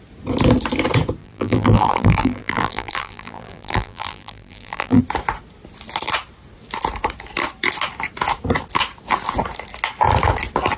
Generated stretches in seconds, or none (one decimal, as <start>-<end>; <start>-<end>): 1.2-5.0